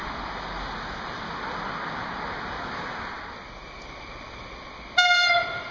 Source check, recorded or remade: recorded